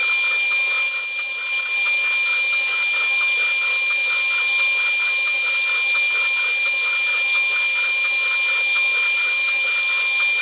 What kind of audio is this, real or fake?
real